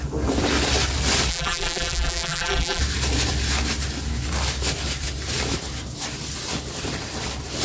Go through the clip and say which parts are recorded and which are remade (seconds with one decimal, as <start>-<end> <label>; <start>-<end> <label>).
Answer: 0.0-1.3 recorded; 1.3-2.8 remade; 2.8-7.6 recorded